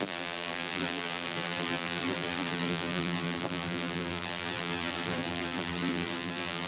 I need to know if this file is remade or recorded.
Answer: remade